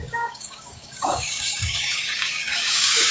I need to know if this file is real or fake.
fake